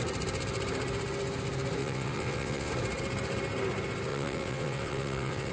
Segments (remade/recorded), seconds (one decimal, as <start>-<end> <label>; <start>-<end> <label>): 0.0-1.8 recorded; 1.8-2.7 remade; 2.7-4.1 recorded; 4.1-5.5 remade